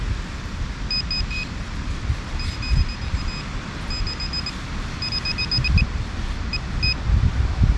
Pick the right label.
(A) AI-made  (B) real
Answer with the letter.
B